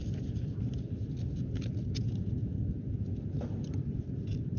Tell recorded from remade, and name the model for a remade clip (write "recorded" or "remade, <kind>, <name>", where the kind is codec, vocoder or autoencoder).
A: recorded